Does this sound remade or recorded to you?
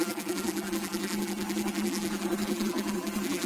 remade